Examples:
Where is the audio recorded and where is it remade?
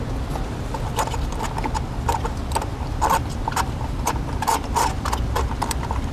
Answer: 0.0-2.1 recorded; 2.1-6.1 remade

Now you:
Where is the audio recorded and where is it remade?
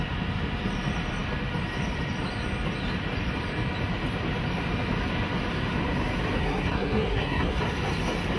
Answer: 0.0-6.4 recorded; 6.4-7.6 remade; 7.6-8.4 recorded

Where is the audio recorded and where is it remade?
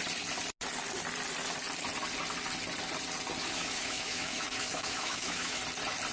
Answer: 0.0-3.4 recorded; 3.4-5.6 remade; 5.6-6.1 recorded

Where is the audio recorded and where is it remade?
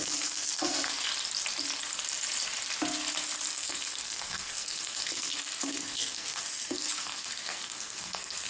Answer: 0.0-1.1 remade; 1.1-3.5 recorded; 3.5-8.5 remade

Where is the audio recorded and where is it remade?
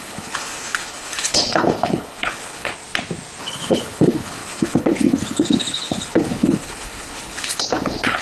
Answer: 0.0-2.7 remade; 2.7-3.4 recorded; 3.4-8.2 remade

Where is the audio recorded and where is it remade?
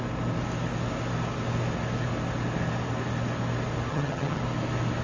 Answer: 0.0-3.9 recorded; 3.9-4.4 remade; 4.4-5.0 recorded